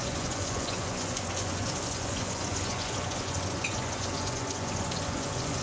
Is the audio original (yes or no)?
no